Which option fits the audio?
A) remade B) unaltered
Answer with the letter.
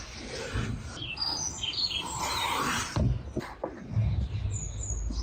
B